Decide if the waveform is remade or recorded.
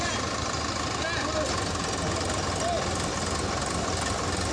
recorded